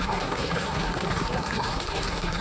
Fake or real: fake